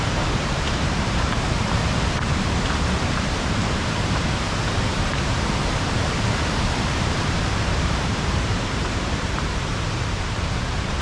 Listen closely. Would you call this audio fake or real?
fake